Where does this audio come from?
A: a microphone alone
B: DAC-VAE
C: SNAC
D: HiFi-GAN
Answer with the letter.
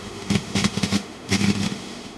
B